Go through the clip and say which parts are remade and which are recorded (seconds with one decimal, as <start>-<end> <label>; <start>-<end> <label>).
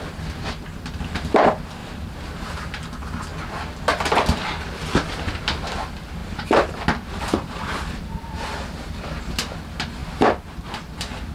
0.0-1.8 recorded; 1.8-2.8 remade; 2.8-6.2 recorded; 6.2-7.9 remade; 7.9-11.3 recorded